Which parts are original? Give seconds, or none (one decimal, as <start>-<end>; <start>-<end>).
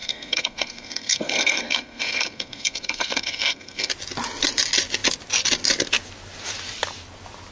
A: 3.9-7.5